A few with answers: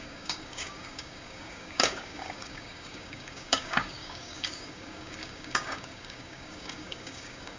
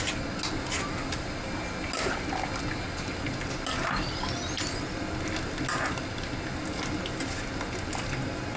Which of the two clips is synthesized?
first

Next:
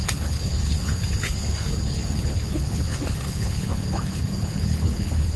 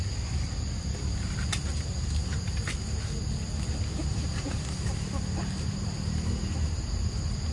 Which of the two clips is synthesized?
first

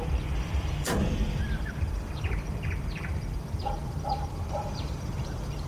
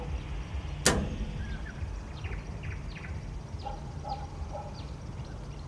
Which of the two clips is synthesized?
first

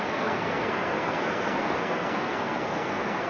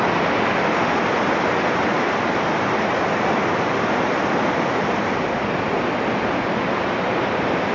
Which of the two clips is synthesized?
first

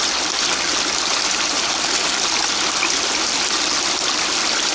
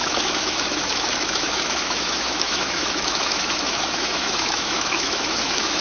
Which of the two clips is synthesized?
second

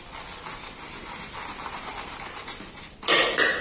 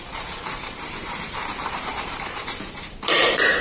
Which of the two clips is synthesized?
second